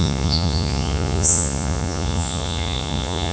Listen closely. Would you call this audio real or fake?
fake